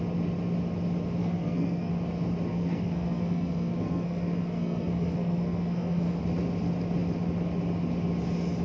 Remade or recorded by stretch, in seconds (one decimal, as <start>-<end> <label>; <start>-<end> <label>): 0.0-1.2 recorded; 1.2-1.9 remade; 1.9-2.5 recorded; 2.5-6.2 remade; 6.2-8.6 recorded